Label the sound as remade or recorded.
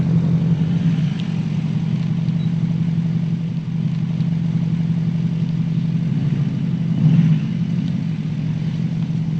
recorded